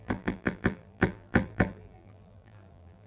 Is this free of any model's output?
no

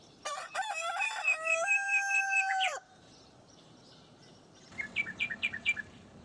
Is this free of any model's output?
no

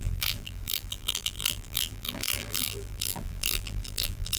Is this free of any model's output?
no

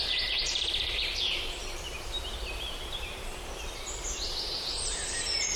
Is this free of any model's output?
no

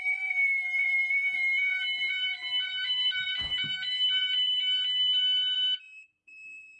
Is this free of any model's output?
no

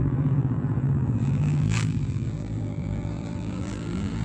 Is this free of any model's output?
no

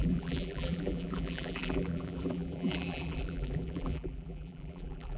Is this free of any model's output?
no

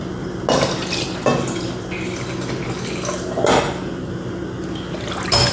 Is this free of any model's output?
yes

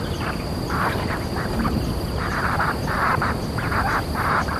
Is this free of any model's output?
no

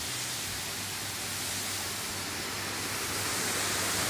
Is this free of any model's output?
yes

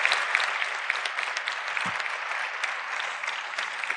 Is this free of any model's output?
yes